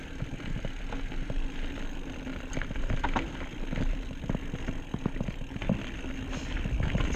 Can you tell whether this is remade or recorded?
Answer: recorded